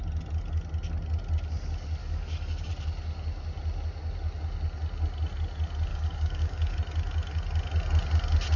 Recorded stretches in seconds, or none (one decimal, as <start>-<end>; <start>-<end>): 0.0-2.0; 2.7-5.9; 6.8-8.6